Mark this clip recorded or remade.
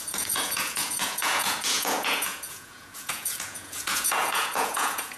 remade